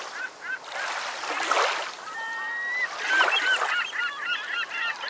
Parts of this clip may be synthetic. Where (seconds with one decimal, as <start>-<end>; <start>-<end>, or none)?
none